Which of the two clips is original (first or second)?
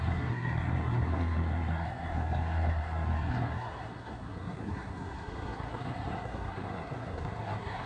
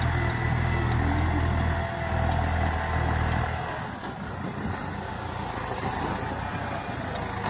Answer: second